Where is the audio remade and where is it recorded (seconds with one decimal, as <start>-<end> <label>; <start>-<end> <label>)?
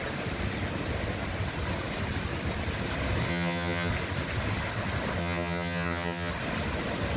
0.0-3.3 recorded; 3.3-3.9 remade; 3.9-5.2 recorded; 5.2-6.3 remade; 6.3-7.2 recorded